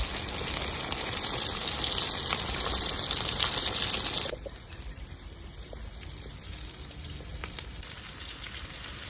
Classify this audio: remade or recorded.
recorded